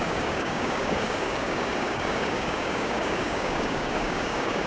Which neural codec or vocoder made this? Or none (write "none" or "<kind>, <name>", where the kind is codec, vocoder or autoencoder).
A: codec, DAC